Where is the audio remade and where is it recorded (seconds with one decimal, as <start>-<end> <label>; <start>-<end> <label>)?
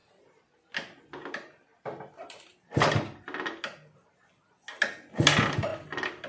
0.0-1.0 recorded; 1.0-1.7 remade; 1.7-5.1 recorded; 5.1-5.7 remade; 5.7-6.3 recorded